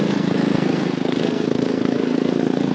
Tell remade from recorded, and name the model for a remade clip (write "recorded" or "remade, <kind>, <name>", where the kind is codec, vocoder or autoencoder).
remade, codec, SNAC